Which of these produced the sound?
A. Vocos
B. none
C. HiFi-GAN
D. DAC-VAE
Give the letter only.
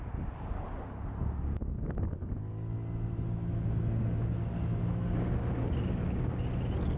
B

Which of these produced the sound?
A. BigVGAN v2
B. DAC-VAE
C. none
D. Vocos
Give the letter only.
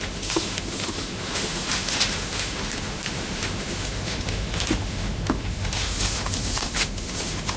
B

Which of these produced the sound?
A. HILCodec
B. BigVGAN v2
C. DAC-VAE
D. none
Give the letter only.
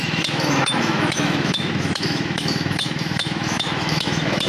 C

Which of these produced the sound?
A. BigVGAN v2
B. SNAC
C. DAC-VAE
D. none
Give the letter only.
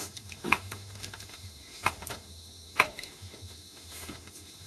C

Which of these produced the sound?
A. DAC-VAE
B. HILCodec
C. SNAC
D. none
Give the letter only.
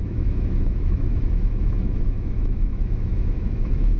A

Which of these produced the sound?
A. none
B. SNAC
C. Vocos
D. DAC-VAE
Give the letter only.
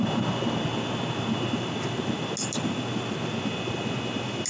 A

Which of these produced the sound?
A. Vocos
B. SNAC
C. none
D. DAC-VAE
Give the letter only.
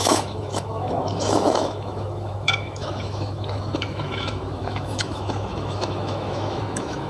D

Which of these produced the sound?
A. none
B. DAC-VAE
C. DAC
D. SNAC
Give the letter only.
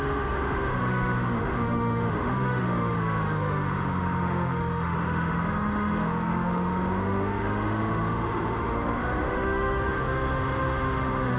B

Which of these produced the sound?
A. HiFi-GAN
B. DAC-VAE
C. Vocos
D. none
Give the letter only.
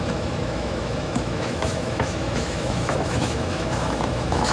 B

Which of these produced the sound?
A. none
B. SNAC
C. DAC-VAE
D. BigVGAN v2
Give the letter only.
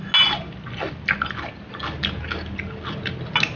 A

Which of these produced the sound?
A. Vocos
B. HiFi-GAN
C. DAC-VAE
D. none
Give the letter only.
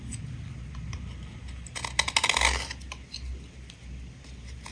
D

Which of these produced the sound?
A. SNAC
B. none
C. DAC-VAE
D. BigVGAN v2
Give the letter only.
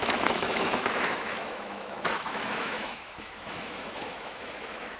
C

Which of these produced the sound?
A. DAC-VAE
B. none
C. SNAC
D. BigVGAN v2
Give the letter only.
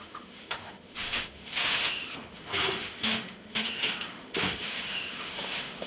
A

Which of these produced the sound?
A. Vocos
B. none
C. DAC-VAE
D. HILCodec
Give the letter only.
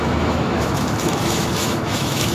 C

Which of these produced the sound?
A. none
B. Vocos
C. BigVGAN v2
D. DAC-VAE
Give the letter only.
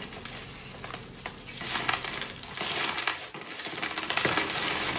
A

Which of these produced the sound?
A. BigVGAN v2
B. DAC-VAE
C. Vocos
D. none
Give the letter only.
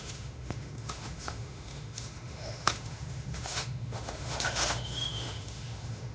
B